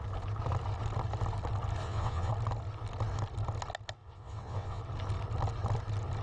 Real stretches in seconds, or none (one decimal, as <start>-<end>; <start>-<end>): 0.0-1.8; 2.3-4.0; 4.8-6.2